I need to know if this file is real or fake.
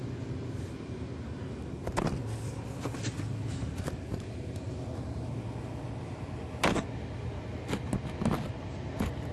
real